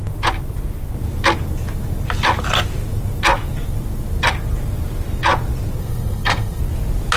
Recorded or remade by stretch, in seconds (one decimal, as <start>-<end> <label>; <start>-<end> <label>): 0.0-5.8 recorded; 5.8-6.6 remade; 6.6-7.2 recorded